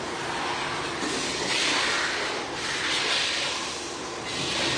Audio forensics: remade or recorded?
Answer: recorded